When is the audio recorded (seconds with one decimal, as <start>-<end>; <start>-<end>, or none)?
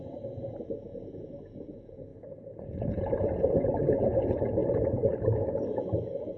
none